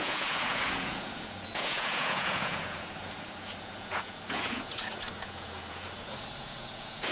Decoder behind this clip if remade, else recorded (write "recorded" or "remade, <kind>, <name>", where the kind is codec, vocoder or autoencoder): remade, vocoder, Vocos